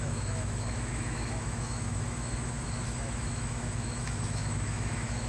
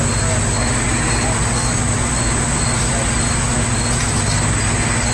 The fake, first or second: first